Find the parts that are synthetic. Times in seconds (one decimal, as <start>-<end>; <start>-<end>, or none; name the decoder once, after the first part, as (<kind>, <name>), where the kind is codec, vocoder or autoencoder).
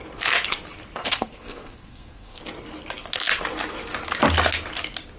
1.0-2.4 (codec, SNAC)